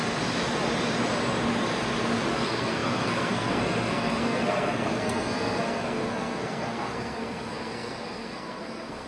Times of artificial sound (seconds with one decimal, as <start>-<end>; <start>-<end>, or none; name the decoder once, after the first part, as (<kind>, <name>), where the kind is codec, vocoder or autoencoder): 2.3-9.1 (codec, SNAC)